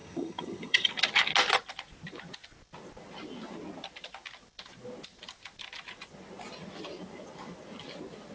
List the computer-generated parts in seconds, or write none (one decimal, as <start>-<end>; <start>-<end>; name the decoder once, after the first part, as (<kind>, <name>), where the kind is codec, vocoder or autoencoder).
0.0-0.9 (vocoder, HiFi-GAN)